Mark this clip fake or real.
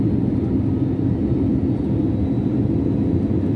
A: real